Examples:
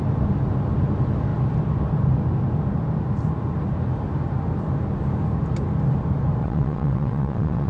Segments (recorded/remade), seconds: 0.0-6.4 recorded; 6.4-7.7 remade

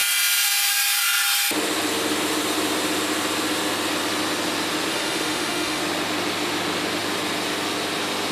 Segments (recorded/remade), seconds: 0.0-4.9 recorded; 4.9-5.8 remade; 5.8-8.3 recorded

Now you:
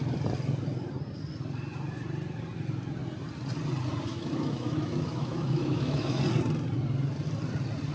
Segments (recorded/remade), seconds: 0.0-4.1 recorded; 4.1-6.2 remade; 6.2-7.9 recorded

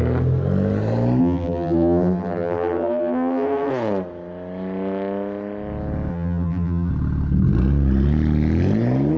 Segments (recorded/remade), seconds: 0.0-1.2 recorded; 1.2-3.7 remade; 3.7-6.1 recorded; 6.1-6.9 remade; 6.9-9.2 recorded

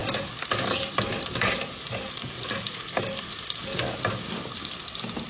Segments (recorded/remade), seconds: 0.0-5.3 recorded